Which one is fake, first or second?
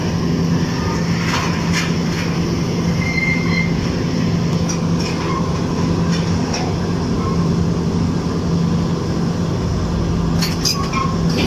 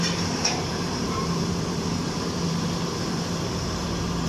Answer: second